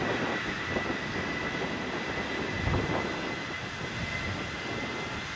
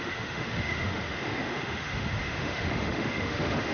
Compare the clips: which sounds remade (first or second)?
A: second